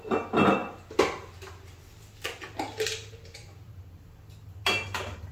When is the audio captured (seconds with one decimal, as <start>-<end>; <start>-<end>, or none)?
0.0-5.3